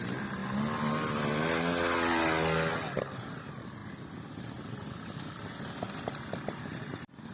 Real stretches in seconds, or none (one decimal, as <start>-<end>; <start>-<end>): 0.0-7.3